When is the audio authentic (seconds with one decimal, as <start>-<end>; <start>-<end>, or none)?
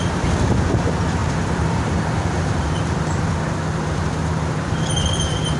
0.0-1.2; 3.3-3.7